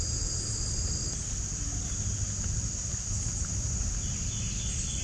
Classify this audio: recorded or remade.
recorded